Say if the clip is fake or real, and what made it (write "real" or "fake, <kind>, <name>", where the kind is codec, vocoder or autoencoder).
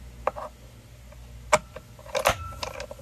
real